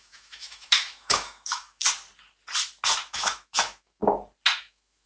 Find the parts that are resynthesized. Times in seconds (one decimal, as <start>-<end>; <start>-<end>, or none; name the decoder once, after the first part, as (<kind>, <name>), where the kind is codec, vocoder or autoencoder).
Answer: 0.0-1.8 (autoencoder, DAC-VAE); 3.1-4.0; 4.6-5.1